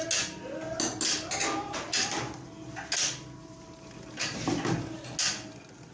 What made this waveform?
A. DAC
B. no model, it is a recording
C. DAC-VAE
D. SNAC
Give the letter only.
B